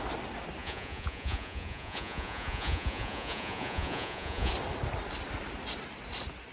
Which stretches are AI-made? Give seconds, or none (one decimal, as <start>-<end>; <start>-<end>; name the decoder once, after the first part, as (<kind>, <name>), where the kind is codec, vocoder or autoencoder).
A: 0.6-4.5 (vocoder, Vocos)